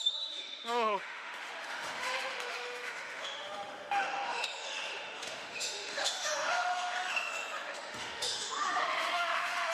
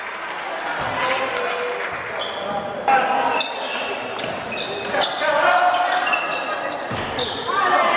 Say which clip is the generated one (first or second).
first